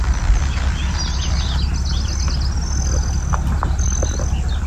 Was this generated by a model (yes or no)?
no